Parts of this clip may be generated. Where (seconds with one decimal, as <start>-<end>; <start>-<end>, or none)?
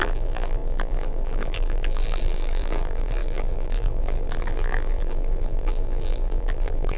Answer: 0.0-7.0